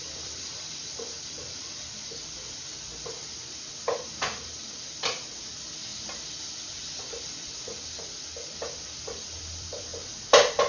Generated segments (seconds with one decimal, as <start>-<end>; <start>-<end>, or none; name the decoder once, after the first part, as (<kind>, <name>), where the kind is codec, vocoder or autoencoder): 0.0-0.8 (vocoder, BigVGAN v2); 1.6-9.9